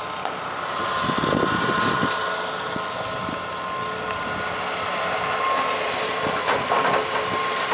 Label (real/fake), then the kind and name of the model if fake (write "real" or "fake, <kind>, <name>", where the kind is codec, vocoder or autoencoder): real